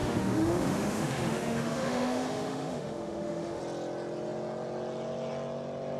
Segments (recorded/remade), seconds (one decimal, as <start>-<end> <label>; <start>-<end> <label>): 0.0-3.6 remade; 3.6-6.0 recorded